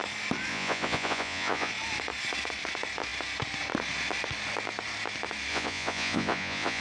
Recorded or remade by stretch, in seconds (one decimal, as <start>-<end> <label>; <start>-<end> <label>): 0.0-0.5 recorded; 0.5-1.7 remade; 1.7-5.5 recorded; 5.5-6.8 remade